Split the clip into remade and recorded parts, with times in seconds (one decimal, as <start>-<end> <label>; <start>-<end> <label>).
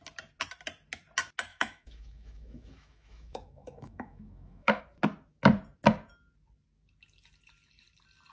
0.0-1.5 recorded; 1.5-4.8 remade; 4.8-8.3 recorded